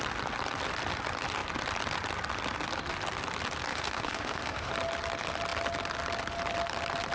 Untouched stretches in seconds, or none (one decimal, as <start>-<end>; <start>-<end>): 0.0-3.7; 4.7-7.1